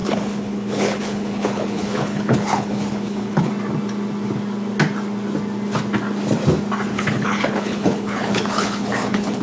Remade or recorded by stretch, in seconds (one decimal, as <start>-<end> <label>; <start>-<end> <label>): 0.0-3.5 remade; 3.5-6.9 recorded; 6.9-9.4 remade